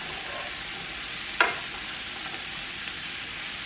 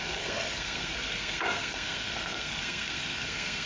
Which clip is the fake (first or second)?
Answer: second